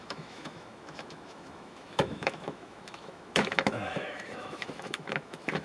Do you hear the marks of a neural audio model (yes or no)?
yes